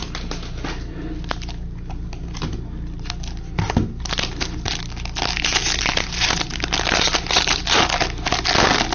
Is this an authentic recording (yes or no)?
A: yes